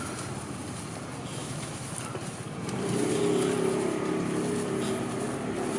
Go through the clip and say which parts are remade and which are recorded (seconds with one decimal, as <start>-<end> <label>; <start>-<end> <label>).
0.0-1.4 recorded; 1.4-1.9 remade; 1.9-5.8 recorded